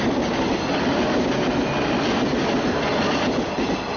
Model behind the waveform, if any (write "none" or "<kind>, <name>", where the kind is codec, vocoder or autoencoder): none